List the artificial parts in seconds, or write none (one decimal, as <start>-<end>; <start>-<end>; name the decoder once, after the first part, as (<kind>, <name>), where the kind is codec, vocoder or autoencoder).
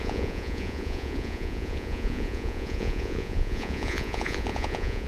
0.0-5.1 (vocoder, Vocos)